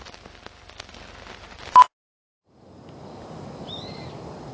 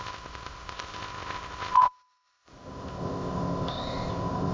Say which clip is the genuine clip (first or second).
first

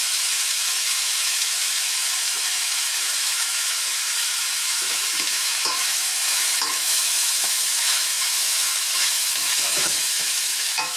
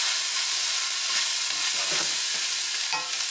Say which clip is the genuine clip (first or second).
second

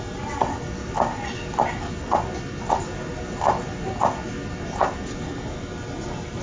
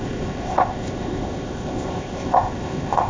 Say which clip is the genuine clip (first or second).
first